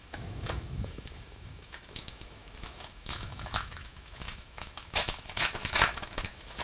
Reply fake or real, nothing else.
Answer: fake